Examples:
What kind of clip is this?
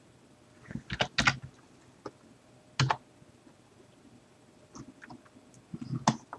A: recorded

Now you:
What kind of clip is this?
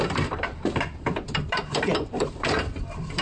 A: remade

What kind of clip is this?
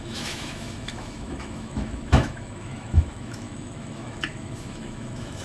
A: remade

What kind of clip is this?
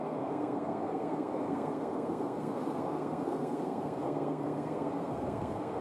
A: remade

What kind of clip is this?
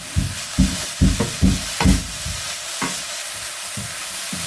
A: recorded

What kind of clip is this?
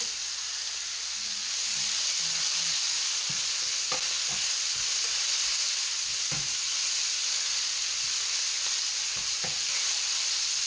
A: recorded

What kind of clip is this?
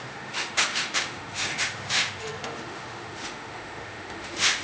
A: remade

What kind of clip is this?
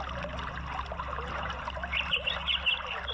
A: recorded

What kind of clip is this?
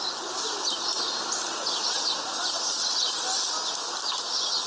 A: recorded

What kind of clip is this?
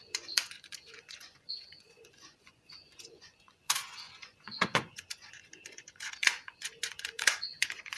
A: remade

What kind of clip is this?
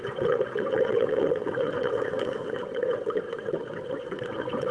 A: remade